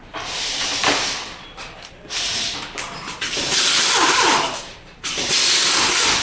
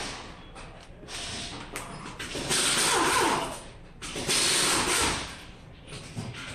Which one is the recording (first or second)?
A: second